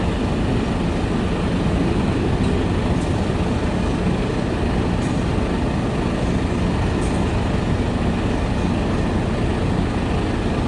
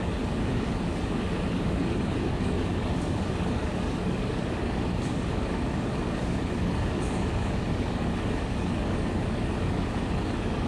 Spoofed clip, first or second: second